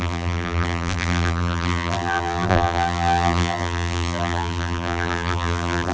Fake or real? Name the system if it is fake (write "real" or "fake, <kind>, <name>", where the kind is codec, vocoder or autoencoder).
fake, vocoder, BigVGAN v2